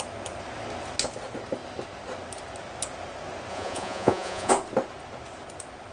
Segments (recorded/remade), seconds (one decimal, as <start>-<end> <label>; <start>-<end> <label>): 0.0-3.5 recorded; 3.5-4.5 remade; 4.5-5.9 recorded